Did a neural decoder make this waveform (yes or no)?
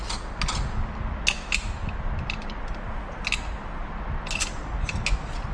no